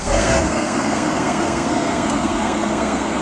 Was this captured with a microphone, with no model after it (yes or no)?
no